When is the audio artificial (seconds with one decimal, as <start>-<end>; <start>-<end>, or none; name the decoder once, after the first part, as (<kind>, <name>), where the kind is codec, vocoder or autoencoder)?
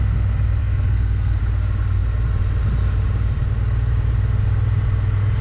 0.6-1.4 (codec, SNAC)